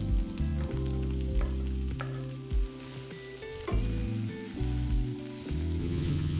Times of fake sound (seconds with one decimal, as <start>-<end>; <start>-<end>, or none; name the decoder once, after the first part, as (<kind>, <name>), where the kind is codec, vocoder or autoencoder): 5.8-6.4 (vocoder, HiFi-GAN)